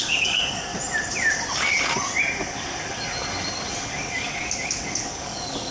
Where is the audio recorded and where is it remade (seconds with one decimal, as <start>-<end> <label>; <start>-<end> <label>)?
0.0-0.7 remade; 0.7-3.9 recorded; 3.9-5.7 remade